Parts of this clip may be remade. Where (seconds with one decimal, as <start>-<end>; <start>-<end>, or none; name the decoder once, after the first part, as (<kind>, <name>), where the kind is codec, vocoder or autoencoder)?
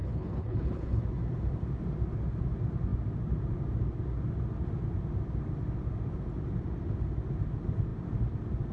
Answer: 0.0-1.0 (codec, HILCodec)